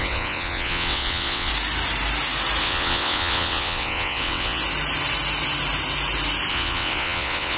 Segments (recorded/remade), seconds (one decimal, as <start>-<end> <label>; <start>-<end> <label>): 0.0-1.5 remade; 1.5-2.6 recorded; 2.6-4.6 remade; 4.6-6.5 recorded; 6.5-7.6 remade